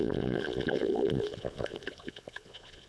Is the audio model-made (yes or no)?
yes